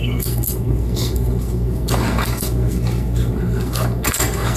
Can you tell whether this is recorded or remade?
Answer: remade